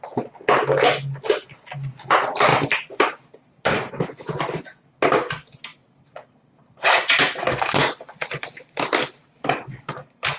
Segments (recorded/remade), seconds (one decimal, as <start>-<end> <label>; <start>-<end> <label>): 0.0-2.5 recorded; 2.5-3.9 remade; 3.9-5.7 recorded; 5.7-10.4 remade